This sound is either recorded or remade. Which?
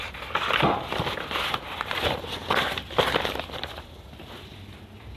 recorded